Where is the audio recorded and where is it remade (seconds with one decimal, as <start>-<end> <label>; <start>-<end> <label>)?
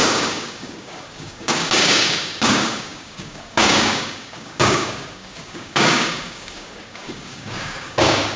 0.0-8.4 remade